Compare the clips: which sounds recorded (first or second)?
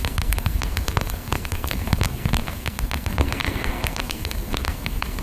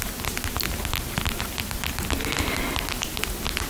second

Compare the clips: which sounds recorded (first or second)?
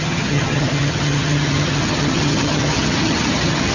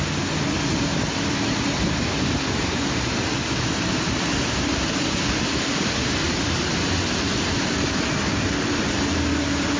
second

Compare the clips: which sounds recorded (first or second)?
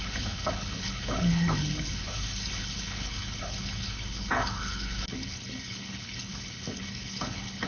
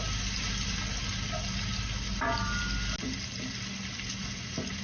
second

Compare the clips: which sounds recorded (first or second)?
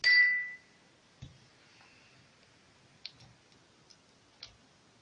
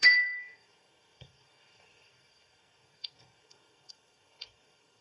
first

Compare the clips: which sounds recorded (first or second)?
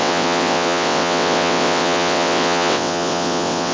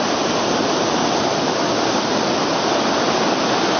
second